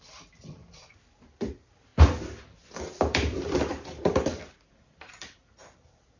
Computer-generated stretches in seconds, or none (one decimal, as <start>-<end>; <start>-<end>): 0.0-1.9; 2.8-6.2